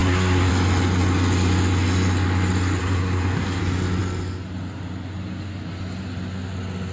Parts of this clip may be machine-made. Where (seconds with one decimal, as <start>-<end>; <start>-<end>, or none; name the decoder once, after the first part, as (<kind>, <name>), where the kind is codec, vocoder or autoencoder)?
0.0-0.5 (codec, SNAC); 2.8-3.6